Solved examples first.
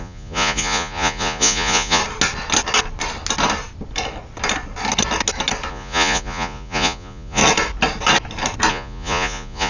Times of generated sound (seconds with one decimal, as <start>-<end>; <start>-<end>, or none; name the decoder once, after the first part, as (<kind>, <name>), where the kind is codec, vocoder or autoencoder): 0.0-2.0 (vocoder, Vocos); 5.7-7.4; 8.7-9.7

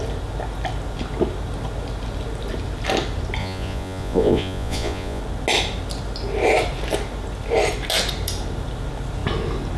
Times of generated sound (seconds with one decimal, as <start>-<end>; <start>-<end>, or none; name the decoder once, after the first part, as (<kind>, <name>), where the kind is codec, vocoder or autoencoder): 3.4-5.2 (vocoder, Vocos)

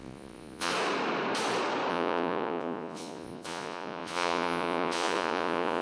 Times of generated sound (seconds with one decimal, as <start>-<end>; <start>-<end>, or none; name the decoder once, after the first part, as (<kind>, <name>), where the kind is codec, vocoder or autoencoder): 0.0-0.7 (vocoder, Vocos); 1.9-5.8